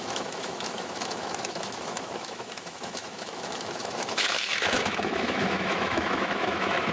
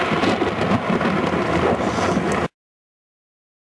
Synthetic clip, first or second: first